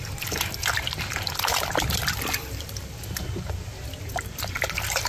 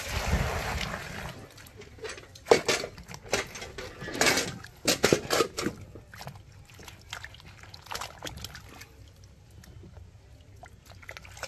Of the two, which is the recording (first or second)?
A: second